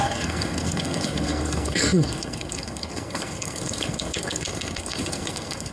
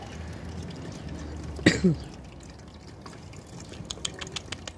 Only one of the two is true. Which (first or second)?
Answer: second